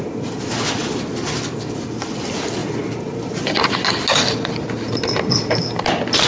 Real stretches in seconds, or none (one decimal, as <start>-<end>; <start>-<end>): 0.0-6.3